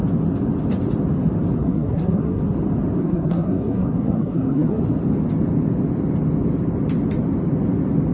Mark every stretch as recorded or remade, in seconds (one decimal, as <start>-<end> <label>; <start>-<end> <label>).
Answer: 0.0-1.6 recorded; 1.6-2.4 remade; 2.4-3.0 recorded; 3.0-4.8 remade; 4.8-8.1 recorded

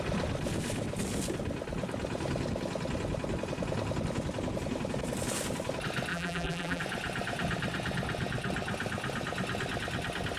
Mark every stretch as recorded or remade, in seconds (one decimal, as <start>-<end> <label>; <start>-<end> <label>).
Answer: 0.0-6.1 recorded; 6.1-6.8 remade; 6.8-10.4 recorded

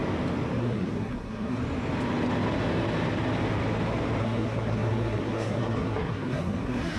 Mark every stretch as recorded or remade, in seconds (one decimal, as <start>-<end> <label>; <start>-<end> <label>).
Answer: 0.0-0.6 recorded; 0.6-1.6 remade; 1.6-4.2 recorded; 4.2-7.0 remade

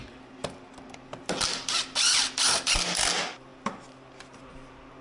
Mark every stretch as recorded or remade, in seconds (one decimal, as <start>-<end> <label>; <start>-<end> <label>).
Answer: 0.0-5.0 recorded

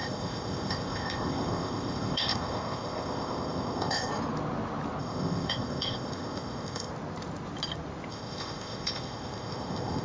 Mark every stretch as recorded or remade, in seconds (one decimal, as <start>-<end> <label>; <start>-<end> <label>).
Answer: 0.0-4.1 remade; 4.1-5.0 recorded; 5.0-6.9 remade; 6.9-8.1 recorded; 8.1-10.0 remade

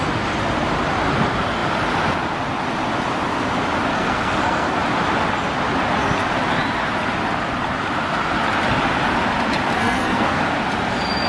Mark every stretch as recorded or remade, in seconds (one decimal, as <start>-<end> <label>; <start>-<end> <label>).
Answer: 0.0-3.9 recorded; 3.9-4.8 remade; 4.8-9.8 recorded; 9.8-10.4 remade; 10.4-11.3 recorded

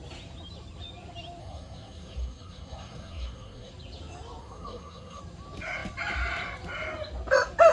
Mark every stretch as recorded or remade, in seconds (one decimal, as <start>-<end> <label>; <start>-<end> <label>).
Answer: 0.0-1.4 recorded; 1.4-3.7 remade; 3.7-4.4 recorded; 4.4-5.2 remade; 5.2-7.7 recorded

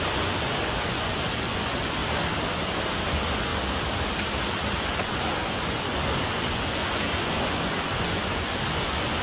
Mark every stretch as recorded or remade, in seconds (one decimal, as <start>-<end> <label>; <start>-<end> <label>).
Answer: 0.0-2.0 remade; 2.0-3.1 recorded; 3.1-3.5 remade; 3.5-4.8 recorded; 4.8-9.2 remade